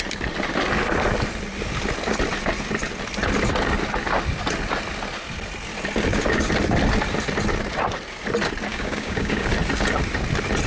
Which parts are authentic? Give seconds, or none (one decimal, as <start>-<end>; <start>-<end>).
0.0-8.7; 9.5-10.7

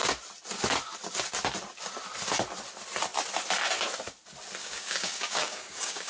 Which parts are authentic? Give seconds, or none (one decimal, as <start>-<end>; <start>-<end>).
0.0-4.6